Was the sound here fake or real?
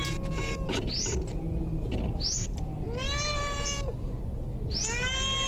real